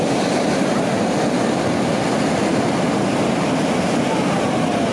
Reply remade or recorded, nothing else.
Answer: recorded